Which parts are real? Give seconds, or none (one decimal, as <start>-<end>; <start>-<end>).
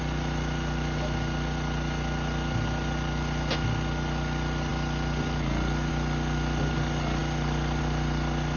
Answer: 0.0-7.2; 7.8-8.6